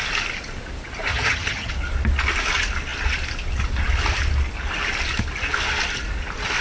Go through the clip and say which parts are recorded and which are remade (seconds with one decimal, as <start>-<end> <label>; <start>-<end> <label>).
0.0-1.1 recorded; 1.1-1.7 remade; 1.7-6.6 recorded